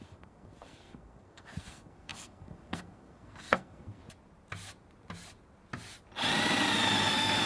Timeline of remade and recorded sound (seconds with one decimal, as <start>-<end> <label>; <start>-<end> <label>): 0.0-4.0 remade; 4.0-7.1 recorded; 7.1-7.5 remade